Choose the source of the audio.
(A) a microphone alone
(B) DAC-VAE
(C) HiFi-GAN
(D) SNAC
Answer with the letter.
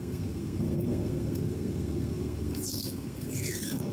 D